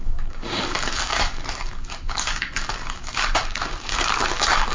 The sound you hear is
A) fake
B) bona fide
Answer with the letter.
A